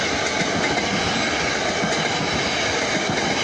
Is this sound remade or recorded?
recorded